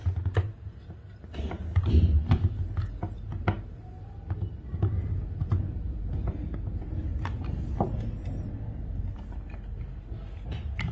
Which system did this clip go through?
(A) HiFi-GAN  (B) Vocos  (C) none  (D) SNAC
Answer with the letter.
C